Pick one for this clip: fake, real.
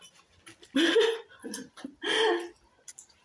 real